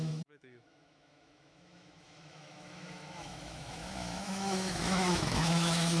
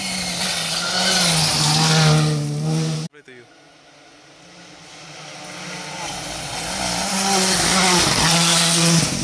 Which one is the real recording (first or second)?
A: second